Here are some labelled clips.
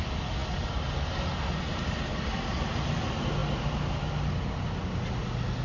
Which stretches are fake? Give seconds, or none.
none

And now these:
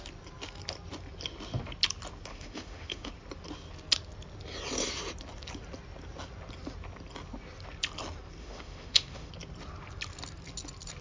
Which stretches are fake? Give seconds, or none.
2.3-3.1 (autoencoder, DAC-VAE); 8.4-9.3

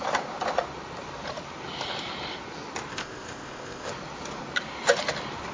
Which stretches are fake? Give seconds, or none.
2.9-3.9 (codec, ZipCodec)

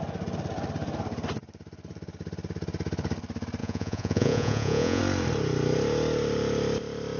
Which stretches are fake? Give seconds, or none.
3.6-5.0 (vocoder, Vocos)